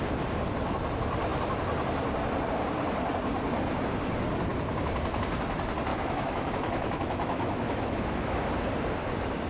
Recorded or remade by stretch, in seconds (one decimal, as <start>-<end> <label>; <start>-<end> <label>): 0.0-5.9 recorded; 5.9-8.5 remade; 8.5-9.5 recorded